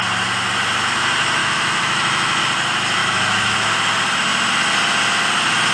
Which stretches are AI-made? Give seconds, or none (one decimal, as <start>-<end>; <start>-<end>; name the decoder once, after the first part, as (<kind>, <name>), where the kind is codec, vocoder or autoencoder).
1.4-2.4 (autoencoder, DAC-VAE); 3.0-3.7

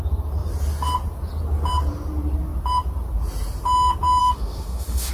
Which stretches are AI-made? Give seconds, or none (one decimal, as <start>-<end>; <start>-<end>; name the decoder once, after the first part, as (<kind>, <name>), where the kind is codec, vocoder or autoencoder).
4.2-5.1 (autoencoder, DAC-VAE)